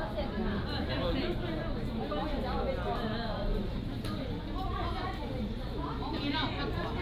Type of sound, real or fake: real